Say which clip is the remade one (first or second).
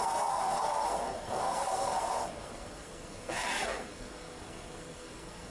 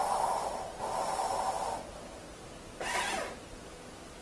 first